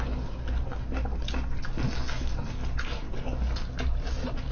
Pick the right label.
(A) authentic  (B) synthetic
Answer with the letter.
A